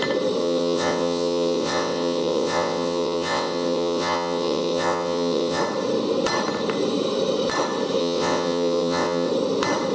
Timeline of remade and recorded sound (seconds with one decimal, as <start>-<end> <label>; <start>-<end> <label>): 0.0-0.4 recorded; 0.4-5.6 remade; 5.6-8.0 recorded; 8.0-9.3 remade; 9.3-9.9 recorded